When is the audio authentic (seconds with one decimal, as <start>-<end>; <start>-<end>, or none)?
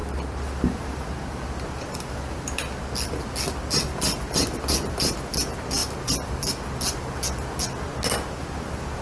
0.0-9.0